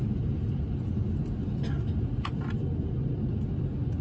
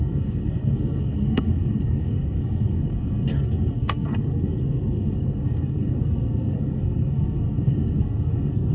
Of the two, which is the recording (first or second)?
first